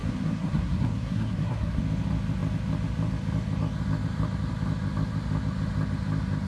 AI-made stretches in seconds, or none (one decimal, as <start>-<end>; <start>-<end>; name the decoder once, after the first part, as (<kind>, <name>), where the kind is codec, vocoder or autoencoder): 0.0-1.8 (codec, SNAC)